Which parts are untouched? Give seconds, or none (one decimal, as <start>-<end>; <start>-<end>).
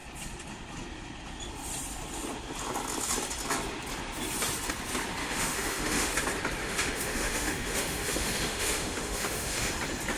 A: 0.0-5.2; 6.1-6.6; 9.7-10.2